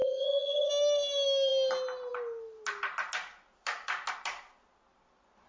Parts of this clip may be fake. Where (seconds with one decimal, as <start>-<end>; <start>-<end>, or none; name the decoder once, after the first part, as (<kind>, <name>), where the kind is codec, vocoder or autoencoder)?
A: 0.0-0.7 (vocoder, HiFi-GAN)